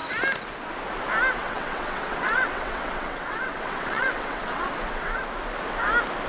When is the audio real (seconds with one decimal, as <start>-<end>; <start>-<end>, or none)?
0.0-1.4; 5.2-6.3